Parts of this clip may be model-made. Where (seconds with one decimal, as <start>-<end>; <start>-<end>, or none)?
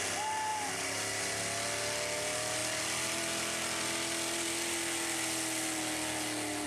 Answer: none